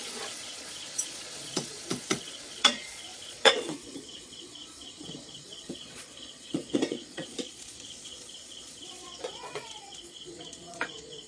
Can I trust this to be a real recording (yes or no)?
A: no